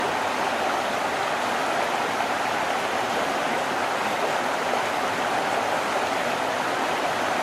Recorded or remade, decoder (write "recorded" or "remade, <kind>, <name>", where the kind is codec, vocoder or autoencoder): recorded